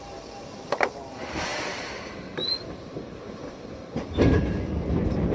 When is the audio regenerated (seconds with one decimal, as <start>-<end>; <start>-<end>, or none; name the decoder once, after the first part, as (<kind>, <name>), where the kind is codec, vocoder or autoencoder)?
1.5-4.7 (vocoder, BigVGAN v2)